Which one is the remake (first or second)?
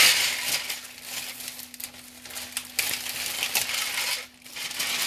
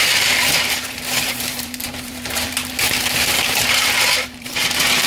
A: second